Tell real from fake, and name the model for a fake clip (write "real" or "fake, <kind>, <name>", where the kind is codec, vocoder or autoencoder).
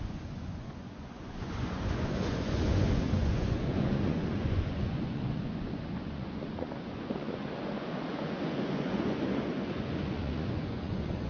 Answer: fake, vocoder, Vocos